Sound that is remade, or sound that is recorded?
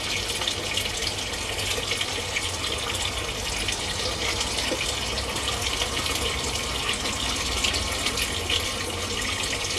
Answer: recorded